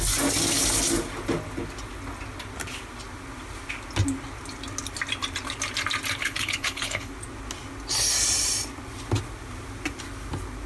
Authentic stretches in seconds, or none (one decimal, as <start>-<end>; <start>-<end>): 0.0-6.2; 7.1-10.7